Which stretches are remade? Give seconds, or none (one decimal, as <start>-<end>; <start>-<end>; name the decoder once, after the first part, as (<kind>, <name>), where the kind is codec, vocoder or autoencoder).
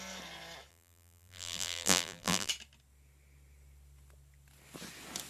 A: 0.7-2.5 (vocoder, BigVGAN v2)